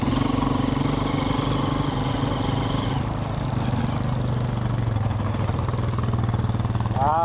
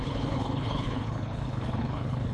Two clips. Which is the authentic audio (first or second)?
first